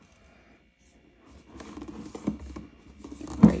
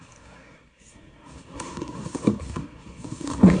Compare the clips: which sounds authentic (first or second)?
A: first